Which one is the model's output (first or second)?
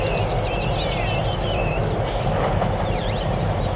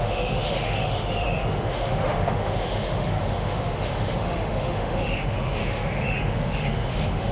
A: second